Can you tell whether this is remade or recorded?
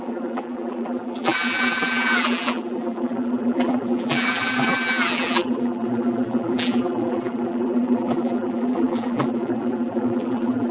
remade